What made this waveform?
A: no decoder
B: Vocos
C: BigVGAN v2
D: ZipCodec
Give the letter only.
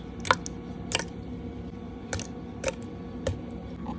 A